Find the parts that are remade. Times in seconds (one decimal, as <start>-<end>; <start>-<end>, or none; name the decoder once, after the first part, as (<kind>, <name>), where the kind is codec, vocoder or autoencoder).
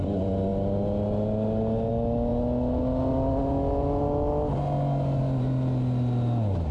none